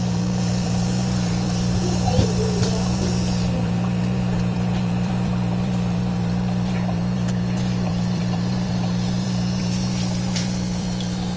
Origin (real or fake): fake